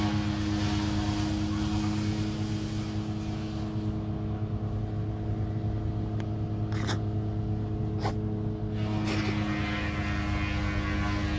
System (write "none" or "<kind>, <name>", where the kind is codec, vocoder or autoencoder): none